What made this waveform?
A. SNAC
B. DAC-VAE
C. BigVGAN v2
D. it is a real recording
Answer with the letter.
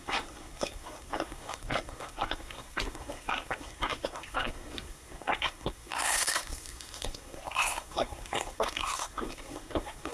A